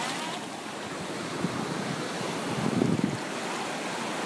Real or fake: real